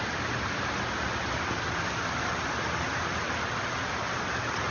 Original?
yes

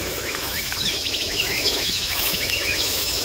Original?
no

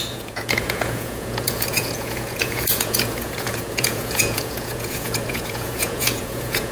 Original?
no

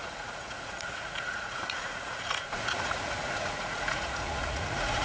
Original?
no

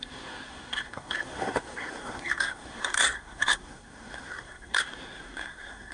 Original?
no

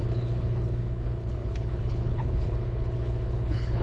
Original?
no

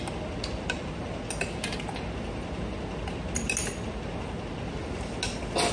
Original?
yes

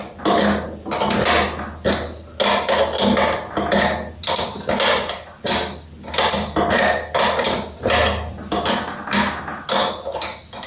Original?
yes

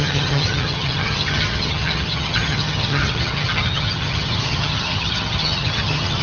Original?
no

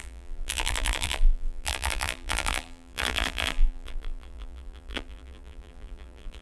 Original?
no